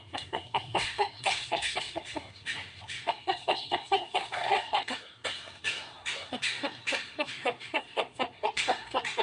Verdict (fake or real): fake